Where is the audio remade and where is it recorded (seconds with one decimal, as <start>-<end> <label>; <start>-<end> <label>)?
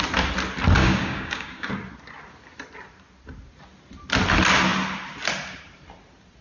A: 0.0-0.8 recorded; 0.8-1.7 remade; 1.7-6.4 recorded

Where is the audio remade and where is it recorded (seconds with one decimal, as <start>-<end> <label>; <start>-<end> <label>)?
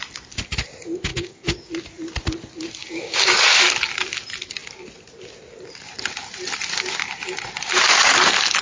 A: 0.0-1.1 recorded; 1.1-1.7 remade; 1.7-2.8 recorded; 2.8-3.3 remade; 3.3-8.6 recorded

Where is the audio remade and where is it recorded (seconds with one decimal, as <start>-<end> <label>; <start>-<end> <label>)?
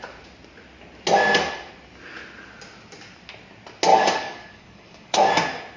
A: 0.0-3.9 recorded; 3.9-5.3 remade; 5.3-5.8 recorded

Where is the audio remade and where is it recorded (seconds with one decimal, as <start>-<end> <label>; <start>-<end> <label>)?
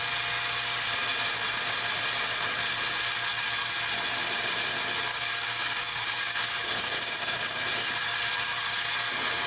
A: 0.0-5.1 recorded; 5.1-7.6 remade; 7.6-9.5 recorded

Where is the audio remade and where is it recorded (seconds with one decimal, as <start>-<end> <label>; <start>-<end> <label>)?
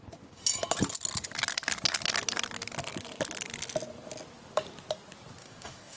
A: 0.0-5.4 recorded; 5.4-6.0 remade